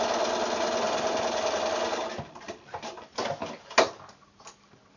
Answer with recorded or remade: recorded